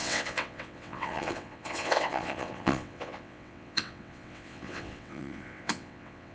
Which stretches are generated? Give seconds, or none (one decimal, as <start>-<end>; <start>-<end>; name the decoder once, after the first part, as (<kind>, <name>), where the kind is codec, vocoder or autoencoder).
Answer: 0.0-6.3 (vocoder, WaveNeXt)